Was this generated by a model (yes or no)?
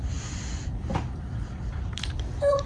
yes